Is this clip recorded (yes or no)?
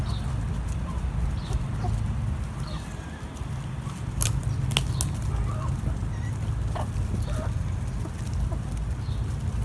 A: yes